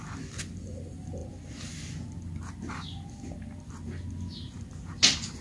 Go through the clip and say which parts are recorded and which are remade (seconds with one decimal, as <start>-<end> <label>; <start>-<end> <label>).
0.0-5.4 recorded